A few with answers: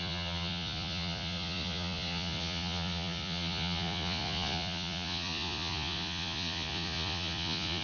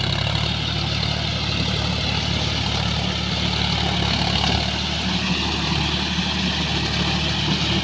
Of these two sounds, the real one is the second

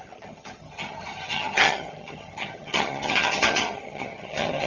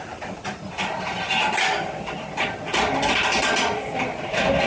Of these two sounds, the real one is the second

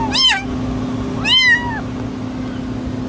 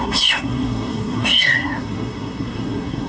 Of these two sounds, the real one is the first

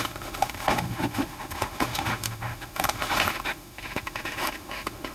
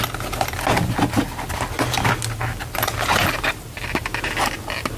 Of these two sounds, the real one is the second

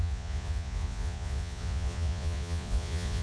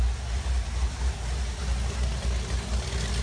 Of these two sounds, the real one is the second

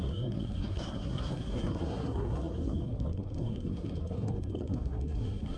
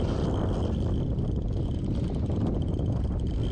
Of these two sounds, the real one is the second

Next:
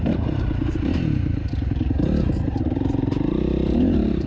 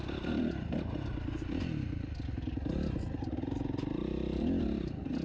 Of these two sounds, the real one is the second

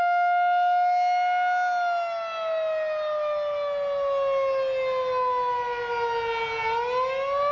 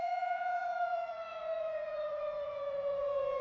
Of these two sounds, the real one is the first